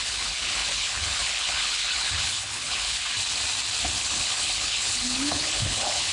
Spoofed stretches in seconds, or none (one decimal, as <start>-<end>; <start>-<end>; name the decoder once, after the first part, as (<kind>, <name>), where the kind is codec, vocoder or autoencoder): 0.0-3.0 (codec, HILCodec); 4.0-6.1